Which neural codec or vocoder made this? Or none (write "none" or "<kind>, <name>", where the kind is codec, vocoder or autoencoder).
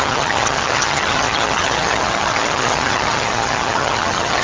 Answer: vocoder, HiFi-GAN